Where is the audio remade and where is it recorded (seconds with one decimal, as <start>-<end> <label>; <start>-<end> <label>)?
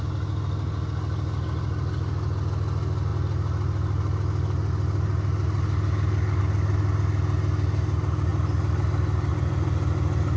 0.0-10.4 recorded